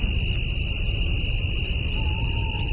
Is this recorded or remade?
recorded